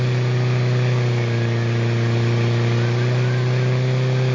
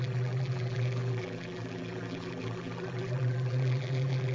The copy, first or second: second